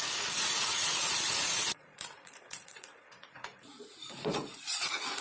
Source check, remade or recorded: remade